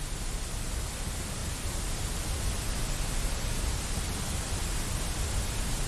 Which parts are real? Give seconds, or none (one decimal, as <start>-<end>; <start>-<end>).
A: 0.0-5.9

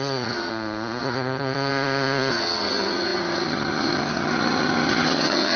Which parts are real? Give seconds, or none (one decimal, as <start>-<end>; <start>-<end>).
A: 0.5-1.0; 1.7-2.3

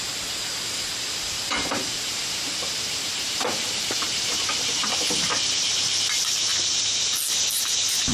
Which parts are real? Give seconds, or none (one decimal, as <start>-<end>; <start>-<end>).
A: 6.5-7.5

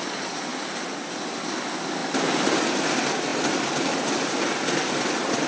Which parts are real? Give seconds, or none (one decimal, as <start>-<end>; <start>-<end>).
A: 0.0-5.5

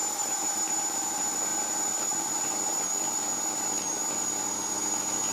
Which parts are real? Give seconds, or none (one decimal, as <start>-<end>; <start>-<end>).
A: 0.0-5.3